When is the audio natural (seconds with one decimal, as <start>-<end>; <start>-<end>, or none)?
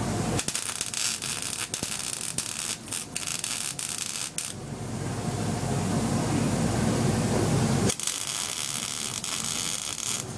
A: 0.0-10.4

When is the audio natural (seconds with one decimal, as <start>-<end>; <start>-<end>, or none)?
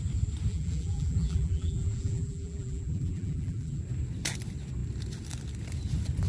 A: 0.0-0.5; 3.8-6.3